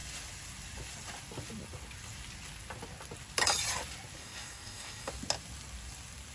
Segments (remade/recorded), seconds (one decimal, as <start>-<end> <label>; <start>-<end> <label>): 0.0-4.2 recorded; 4.2-5.1 remade; 5.1-6.3 recorded